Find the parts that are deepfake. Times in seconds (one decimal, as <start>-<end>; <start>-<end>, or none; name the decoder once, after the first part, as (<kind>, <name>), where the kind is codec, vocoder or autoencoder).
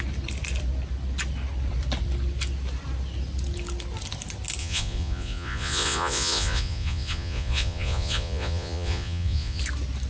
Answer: 4.6-9.6 (vocoder, Vocos)